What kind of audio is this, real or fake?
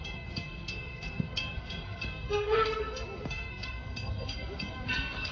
fake